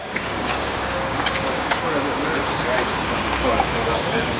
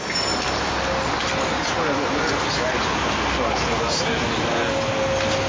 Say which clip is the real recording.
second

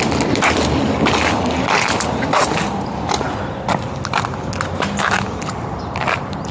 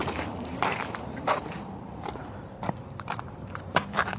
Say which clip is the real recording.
first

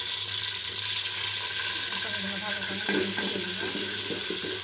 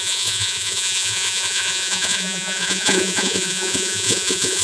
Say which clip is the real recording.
first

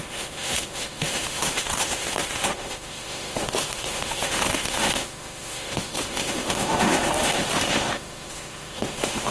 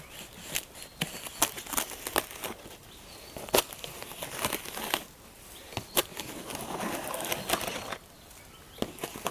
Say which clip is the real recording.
second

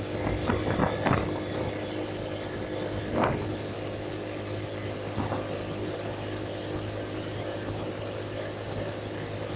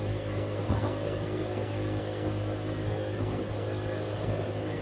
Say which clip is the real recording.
first